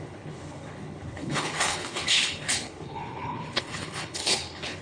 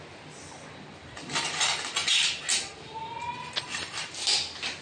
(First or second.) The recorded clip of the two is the second